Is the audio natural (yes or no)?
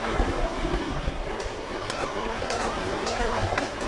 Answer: no